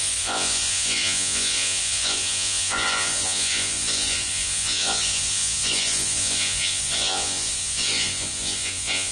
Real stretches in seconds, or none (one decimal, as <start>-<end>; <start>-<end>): none